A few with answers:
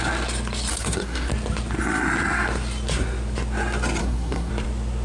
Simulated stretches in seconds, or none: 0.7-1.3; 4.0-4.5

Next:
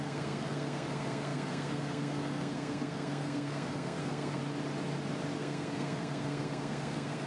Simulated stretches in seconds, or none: 0.0-4.4; 5.4-7.3

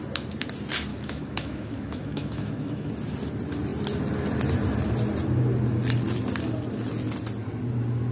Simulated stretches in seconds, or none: 0.9-2.9

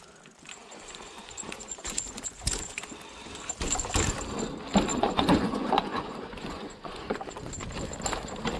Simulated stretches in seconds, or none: 0.6-2.8; 4.9-7.5

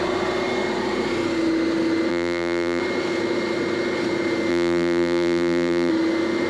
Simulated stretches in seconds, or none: 2.1-2.8; 4.5-5.9

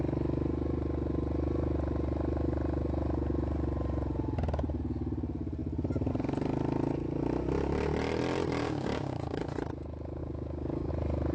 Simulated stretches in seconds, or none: 8.6-9.4; 10.2-10.9

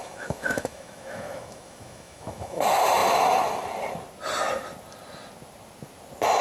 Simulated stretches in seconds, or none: 0.0-2.6